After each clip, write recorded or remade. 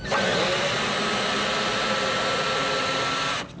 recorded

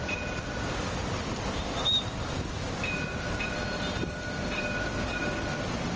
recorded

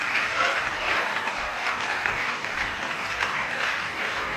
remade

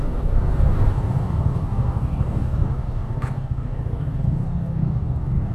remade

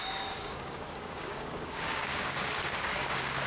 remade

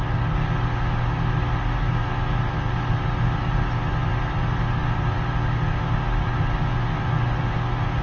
recorded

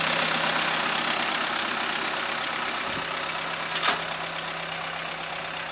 recorded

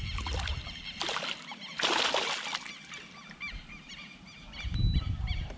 recorded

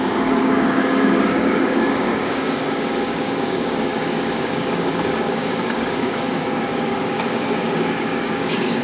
remade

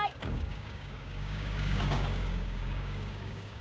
remade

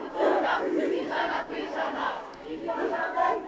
remade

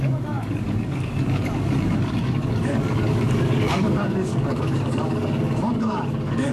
remade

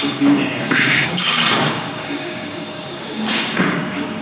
remade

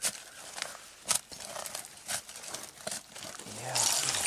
recorded